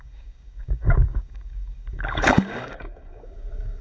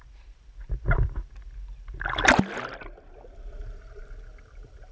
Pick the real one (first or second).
second